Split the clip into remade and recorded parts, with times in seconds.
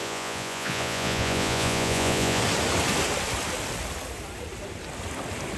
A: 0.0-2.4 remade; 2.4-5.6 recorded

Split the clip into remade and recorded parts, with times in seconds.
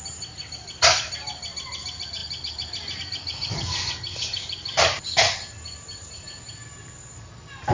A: 0.0-7.7 recorded